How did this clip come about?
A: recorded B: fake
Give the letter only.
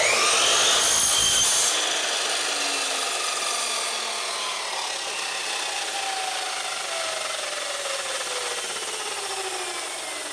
A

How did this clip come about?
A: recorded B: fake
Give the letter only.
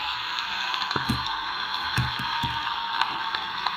B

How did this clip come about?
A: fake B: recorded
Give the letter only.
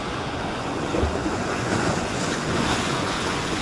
A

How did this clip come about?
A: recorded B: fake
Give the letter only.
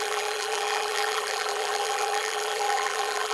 B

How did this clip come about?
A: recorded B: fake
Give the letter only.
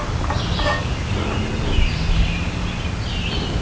A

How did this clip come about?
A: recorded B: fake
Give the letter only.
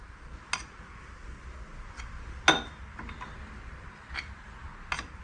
A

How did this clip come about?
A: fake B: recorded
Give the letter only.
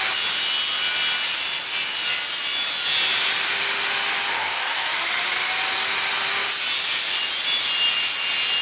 B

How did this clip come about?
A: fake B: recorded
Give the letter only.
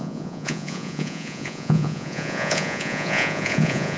A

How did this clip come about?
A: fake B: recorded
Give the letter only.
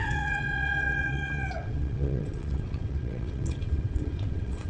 A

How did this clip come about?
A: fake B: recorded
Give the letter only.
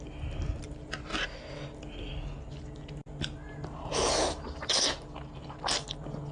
B